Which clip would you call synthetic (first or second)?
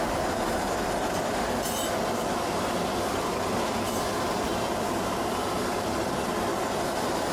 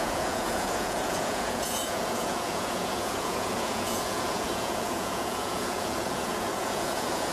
second